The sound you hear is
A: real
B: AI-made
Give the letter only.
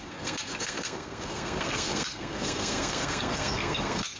B